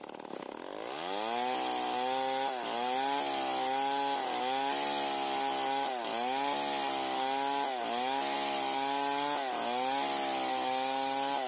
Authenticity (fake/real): real